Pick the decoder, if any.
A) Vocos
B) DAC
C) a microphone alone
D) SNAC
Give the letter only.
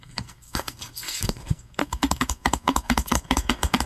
D